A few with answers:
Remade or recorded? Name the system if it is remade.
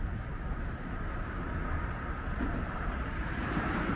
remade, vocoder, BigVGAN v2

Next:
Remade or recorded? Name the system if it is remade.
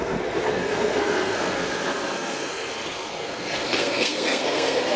remade, codec, SNAC